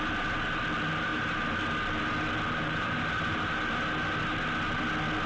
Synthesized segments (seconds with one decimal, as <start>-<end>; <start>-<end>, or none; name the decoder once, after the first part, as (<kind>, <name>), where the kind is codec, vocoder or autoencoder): 1.1-1.6 (vocoder, BigVGAN v2); 2.6-3.8